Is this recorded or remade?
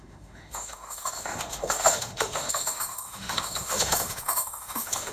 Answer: remade